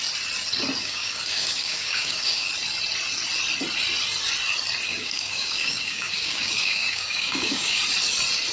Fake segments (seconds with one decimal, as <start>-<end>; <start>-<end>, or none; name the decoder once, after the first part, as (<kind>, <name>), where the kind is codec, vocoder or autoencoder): 0.8-2.5 (codec, DAC); 4.9-7.8